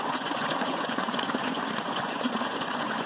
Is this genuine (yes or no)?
no